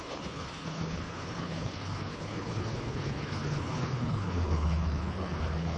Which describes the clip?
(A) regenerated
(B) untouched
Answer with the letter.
A